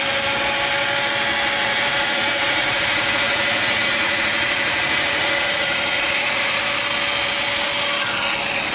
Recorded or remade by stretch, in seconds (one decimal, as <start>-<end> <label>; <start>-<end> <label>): 0.0-1.6 recorded; 1.6-6.6 remade; 6.6-8.7 recorded